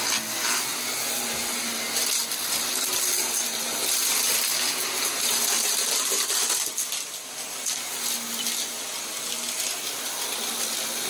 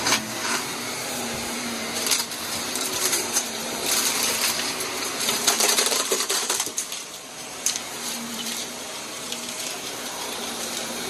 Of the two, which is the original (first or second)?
first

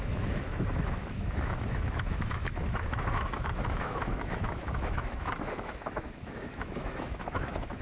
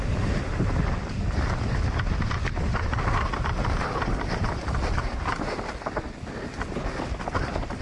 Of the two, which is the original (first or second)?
second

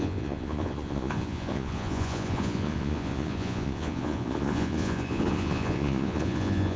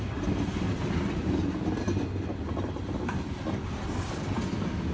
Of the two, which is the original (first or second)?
second